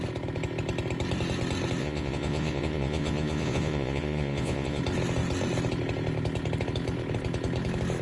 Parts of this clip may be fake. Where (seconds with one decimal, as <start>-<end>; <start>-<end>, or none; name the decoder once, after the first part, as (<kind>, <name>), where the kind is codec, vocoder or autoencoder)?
1.8-4.8 (vocoder, Vocos)